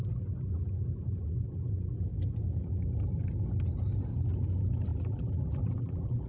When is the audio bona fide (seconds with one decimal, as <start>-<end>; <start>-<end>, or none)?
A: 0.0-4.9